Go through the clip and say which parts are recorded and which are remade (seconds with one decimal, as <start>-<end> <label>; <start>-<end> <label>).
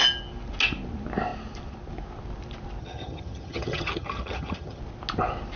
0.0-2.8 recorded; 2.8-4.8 remade; 4.8-5.6 recorded